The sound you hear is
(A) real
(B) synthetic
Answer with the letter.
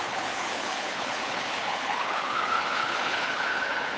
B